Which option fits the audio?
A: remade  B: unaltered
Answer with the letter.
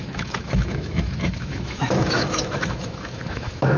A